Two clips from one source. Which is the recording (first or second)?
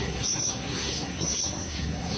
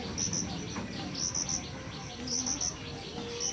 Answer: second